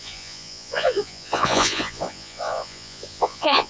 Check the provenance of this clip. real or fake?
fake